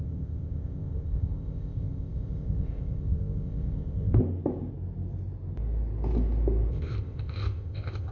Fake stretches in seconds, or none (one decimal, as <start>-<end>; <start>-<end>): 0.0-4.2; 6.7-8.1